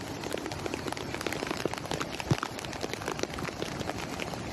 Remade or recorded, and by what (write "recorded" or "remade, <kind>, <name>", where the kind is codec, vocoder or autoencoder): recorded